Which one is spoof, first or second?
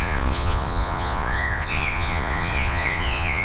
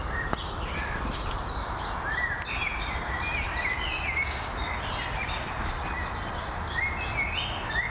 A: first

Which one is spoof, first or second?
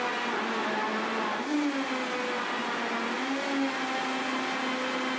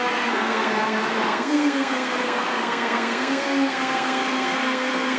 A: second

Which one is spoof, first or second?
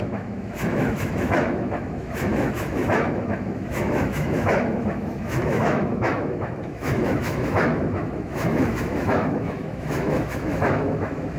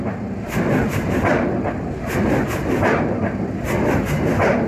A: first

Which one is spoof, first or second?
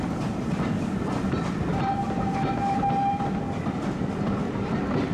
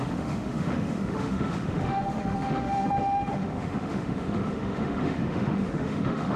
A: second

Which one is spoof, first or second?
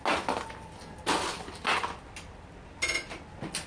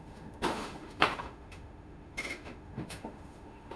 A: second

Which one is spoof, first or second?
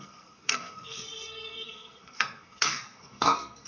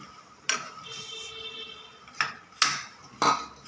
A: first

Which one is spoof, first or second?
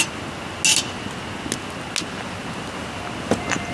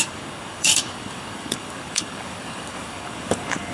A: second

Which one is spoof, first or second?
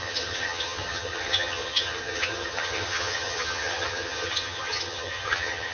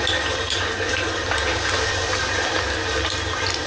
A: first